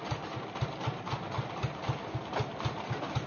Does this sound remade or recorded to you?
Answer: recorded